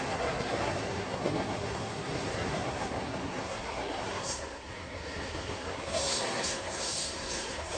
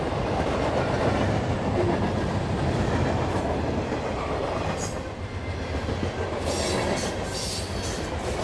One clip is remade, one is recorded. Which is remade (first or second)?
first